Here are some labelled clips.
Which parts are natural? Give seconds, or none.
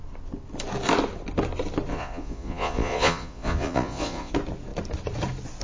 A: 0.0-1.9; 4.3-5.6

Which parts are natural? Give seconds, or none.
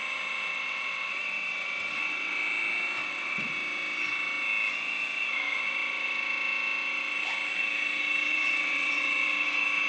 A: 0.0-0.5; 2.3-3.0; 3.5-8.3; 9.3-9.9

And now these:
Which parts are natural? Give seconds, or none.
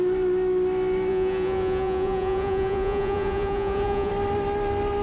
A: 0.0-1.1; 4.1-5.0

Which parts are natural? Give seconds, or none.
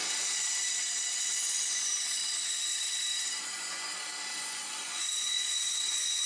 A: 0.0-1.1; 2.2-3.4; 3.9-4.4